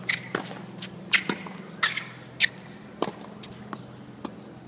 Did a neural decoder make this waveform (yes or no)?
no